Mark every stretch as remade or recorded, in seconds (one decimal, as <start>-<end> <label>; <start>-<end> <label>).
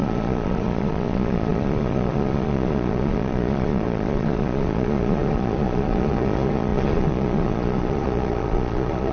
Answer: 0.0-9.1 remade